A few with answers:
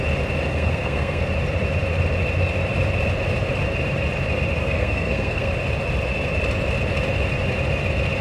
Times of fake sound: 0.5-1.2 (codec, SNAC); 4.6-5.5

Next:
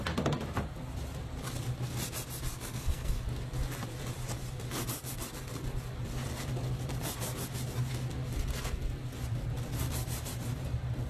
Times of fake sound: 2.5-3.2 (codec, SNAC)